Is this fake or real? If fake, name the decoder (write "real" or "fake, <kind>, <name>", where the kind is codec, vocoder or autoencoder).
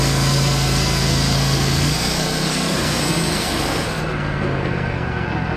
fake, codec, SNAC